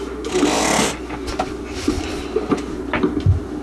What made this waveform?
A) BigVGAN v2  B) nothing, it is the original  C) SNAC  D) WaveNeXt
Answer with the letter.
B